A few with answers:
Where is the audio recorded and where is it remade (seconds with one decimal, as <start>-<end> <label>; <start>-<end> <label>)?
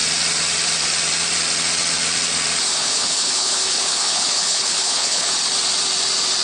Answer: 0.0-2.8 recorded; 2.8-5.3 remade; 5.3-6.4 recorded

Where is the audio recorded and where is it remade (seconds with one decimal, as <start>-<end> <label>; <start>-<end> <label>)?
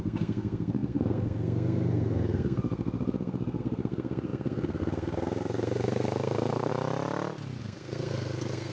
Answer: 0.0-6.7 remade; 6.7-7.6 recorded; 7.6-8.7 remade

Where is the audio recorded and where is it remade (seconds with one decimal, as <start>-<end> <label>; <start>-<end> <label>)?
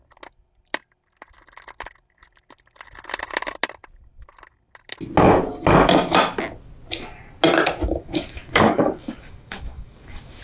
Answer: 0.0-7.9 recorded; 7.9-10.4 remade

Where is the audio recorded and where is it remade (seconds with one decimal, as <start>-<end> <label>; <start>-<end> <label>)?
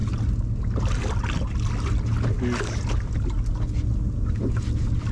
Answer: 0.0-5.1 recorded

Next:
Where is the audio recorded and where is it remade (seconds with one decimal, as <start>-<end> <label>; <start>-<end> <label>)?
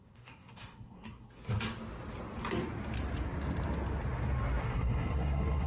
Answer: 0.0-1.4 remade; 1.4-4.6 recorded; 4.6-5.7 remade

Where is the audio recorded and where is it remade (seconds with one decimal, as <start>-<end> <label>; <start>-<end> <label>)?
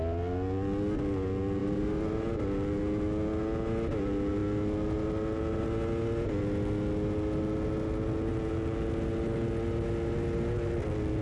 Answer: 0.0-1.6 recorded; 1.6-2.3 remade; 2.3-11.2 recorded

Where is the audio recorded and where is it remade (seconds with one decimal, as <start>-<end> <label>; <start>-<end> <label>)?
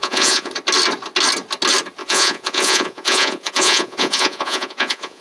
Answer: 0.0-0.5 remade; 0.5-2.0 recorded; 2.0-5.2 remade